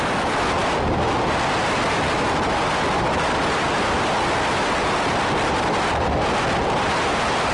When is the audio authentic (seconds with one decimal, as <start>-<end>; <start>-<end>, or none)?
0.0-7.5